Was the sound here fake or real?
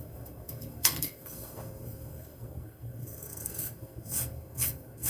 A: fake